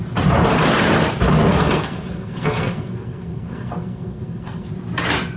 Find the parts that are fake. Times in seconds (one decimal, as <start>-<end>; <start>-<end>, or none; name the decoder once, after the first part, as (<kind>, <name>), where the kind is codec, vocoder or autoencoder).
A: 1.5-4.7 (codec, SNAC)

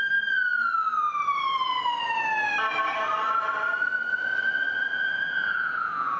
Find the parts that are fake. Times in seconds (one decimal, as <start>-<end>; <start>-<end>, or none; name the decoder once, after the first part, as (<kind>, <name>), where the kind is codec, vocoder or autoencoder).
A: 4.9-6.2 (vocoder, Vocos)

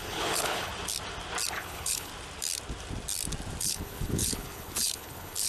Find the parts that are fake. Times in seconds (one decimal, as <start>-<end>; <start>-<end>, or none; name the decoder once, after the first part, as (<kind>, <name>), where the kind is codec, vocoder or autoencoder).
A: 0.0-0.7 (codec, HILCodec); 1.5-2.1; 3.6-5.5

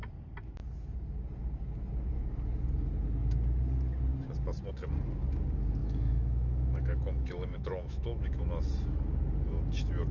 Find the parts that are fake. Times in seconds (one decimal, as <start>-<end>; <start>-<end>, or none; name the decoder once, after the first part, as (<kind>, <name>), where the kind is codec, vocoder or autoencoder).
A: 5.8-8.4 (autoencoder, DAC-VAE)